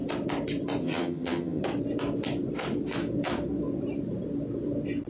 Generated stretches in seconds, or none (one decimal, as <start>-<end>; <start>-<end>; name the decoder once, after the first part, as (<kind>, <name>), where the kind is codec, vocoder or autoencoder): 0.8-1.6 (vocoder, HiFi-GAN)